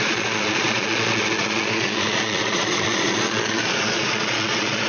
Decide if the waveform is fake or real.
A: fake